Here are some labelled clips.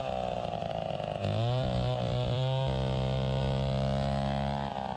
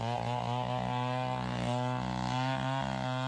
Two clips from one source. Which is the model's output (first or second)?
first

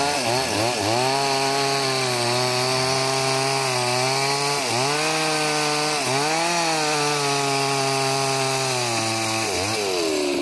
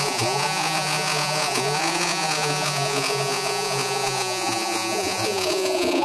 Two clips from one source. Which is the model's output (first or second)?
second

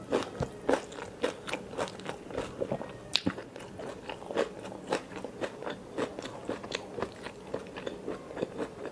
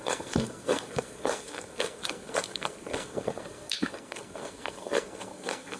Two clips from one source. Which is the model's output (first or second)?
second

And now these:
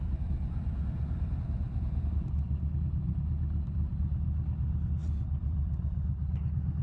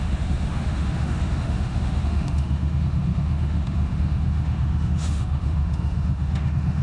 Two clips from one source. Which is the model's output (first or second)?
second